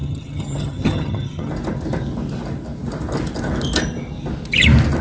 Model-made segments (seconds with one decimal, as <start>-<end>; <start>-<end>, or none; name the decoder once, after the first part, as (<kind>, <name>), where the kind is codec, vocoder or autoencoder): 0.0-1.5 (vocoder, HiFi-GAN)